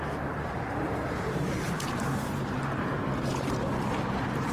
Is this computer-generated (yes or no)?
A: yes